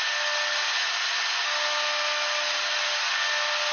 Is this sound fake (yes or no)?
no